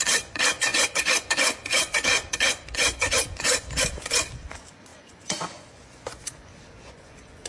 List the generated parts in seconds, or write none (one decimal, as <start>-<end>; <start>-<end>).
0.0-7.5